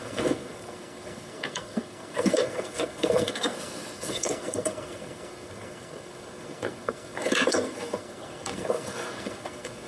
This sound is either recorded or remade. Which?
remade